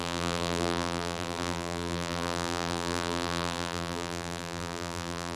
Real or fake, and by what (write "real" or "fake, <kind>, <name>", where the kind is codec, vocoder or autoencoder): fake, vocoder, BigVGAN v2